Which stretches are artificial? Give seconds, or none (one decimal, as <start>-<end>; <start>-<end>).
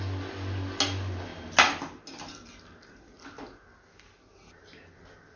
none